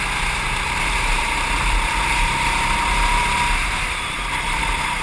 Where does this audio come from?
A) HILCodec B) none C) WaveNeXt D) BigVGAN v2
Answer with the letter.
D